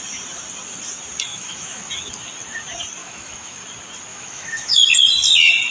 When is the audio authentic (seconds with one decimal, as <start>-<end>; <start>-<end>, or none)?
0.0-1.3; 1.9-3.0; 3.6-4.1; 4.9-5.7

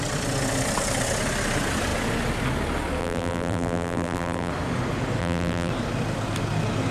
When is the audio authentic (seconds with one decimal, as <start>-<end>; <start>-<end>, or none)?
0.0-3.0; 4.5-5.2; 5.7-6.9

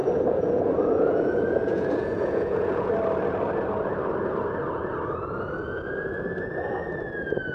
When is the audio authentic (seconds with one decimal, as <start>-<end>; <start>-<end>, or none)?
2.9-7.5

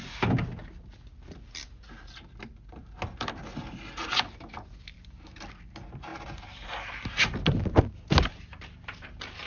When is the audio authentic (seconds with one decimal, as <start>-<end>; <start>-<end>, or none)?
0.0-9.5

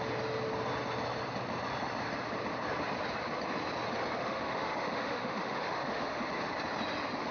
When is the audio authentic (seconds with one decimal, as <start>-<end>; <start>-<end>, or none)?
0.0-4.2; 6.3-7.3

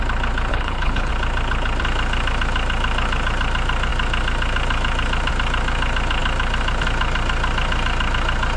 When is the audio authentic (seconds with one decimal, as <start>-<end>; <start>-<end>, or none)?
0.0-0.5; 1.1-8.6